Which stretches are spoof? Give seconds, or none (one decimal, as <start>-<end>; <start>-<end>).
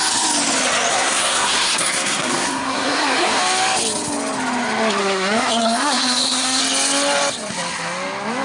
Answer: 0.9-3.4; 5.0-6.6